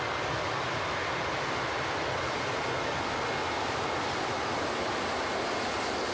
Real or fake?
real